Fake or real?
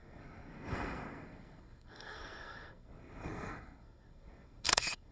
fake